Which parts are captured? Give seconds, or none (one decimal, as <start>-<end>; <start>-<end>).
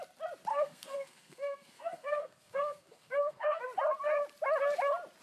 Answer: 0.0-0.5; 3.6-5.2